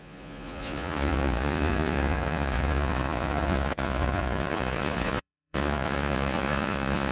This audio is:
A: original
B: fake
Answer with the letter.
B